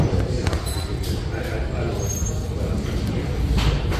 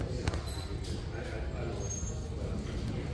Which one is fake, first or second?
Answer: first